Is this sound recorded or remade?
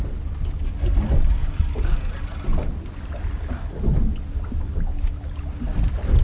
recorded